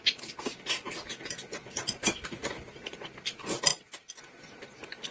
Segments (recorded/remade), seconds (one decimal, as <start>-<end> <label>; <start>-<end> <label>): 0.0-2.0 recorded; 2.0-2.7 remade; 2.7-5.1 recorded